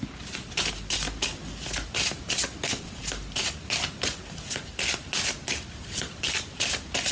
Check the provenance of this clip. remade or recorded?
recorded